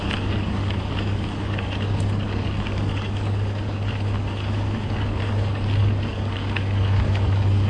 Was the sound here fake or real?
fake